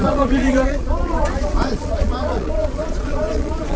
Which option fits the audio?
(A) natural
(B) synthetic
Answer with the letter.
B